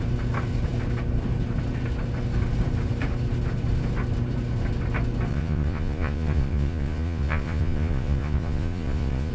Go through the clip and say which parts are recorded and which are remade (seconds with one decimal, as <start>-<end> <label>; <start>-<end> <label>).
0.0-5.3 recorded; 5.3-9.3 remade